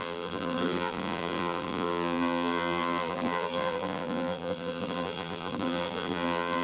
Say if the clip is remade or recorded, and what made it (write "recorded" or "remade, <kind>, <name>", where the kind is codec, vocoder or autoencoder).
remade, vocoder, BigVGAN v2